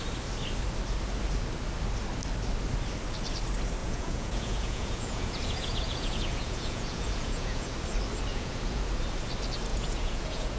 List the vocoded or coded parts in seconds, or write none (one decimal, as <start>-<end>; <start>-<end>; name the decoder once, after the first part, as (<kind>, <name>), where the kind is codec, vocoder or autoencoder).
3.8-7.7 (vocoder, Vocos); 8.3-8.8; 9.7-10.6